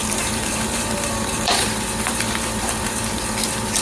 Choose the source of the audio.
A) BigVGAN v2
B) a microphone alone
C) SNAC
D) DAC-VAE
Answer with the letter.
A